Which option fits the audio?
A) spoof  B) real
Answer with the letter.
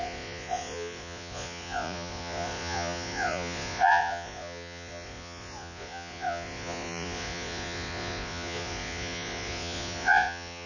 A